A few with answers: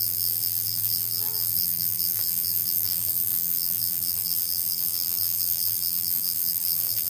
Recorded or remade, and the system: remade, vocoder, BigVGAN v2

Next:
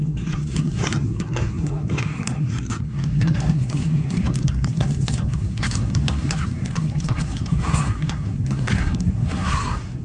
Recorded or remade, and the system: remade, codec, SNAC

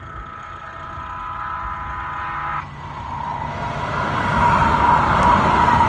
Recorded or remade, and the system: recorded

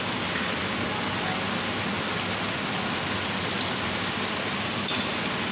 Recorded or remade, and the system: recorded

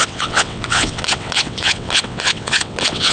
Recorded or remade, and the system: remade, vocoder, WaveNeXt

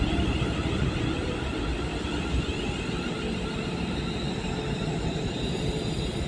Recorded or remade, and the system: recorded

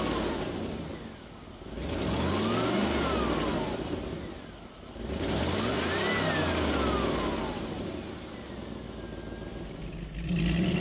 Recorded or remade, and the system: recorded